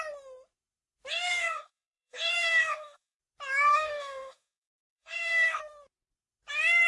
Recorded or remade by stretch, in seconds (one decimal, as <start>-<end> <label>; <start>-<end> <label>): 0.0-1.1 recorded; 1.1-3.2 remade; 3.2-3.7 recorded; 3.7-5.6 remade; 5.6-6.9 recorded